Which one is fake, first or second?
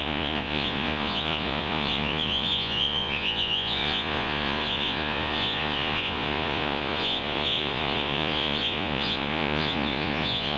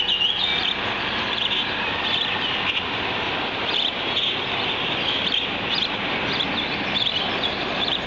first